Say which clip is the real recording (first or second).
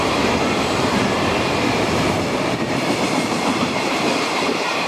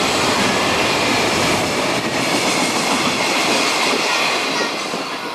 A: second